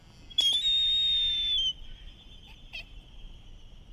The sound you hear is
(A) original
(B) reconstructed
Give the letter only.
A